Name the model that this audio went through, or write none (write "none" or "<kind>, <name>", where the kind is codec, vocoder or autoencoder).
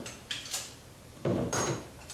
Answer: vocoder, BigVGAN v2